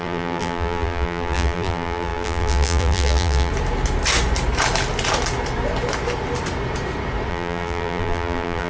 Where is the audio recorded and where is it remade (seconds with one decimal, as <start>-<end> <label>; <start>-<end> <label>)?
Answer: 0.0-3.5 remade; 3.5-7.3 recorded; 7.3-8.7 remade